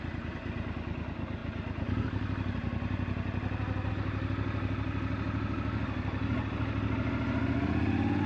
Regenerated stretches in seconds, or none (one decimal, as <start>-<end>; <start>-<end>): none